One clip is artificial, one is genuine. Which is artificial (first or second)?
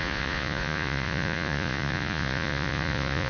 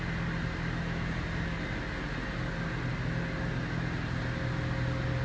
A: first